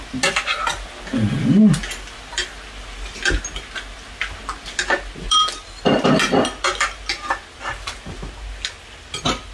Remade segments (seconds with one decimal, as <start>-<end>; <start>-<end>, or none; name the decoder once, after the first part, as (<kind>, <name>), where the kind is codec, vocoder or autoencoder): none

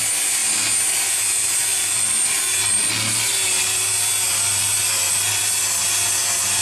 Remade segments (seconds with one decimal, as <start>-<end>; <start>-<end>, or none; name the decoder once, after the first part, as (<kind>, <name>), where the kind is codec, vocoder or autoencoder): 1.7-2.4 (vocoder, BigVGAN v2); 5.3-6.6

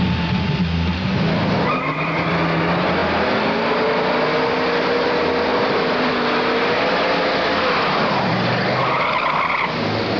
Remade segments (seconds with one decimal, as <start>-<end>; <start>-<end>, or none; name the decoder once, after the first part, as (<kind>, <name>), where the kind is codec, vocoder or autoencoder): 5.5-6.1 (vocoder, BigVGAN v2)

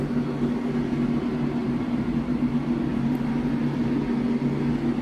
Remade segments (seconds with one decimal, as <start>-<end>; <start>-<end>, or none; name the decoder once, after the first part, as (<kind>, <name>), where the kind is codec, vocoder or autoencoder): 1.6-2.5 (vocoder, BigVGAN v2); 2.9-4.0